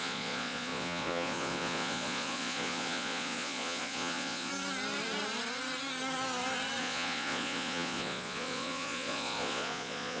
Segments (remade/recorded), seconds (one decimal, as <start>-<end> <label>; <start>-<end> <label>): 0.0-4.5 remade; 4.5-6.8 recorded; 6.8-10.2 remade